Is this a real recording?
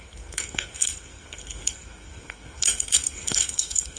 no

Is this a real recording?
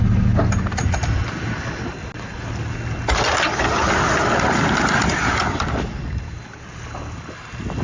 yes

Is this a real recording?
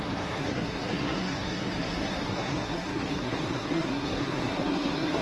no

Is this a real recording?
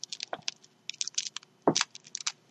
yes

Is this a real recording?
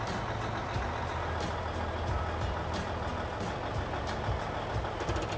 yes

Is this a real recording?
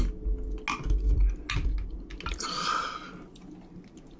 yes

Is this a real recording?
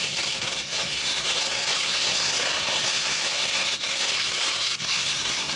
no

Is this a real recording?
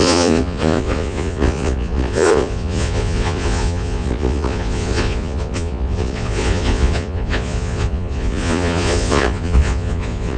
no